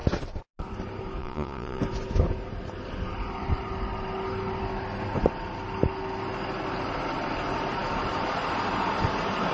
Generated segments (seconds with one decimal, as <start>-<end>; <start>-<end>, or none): 1.2-1.8